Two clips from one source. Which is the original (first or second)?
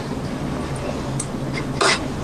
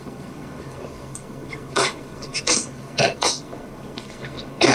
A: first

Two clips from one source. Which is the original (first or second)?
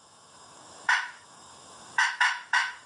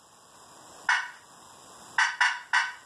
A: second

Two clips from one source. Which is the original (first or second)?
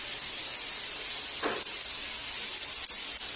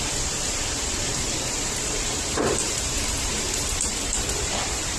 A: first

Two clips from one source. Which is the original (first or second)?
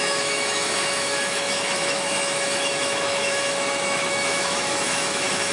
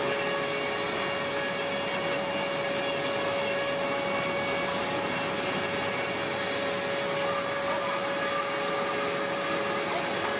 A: second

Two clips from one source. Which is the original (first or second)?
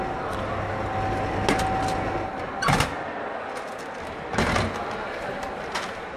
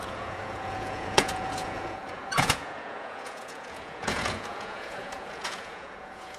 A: first